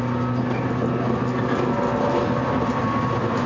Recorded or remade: recorded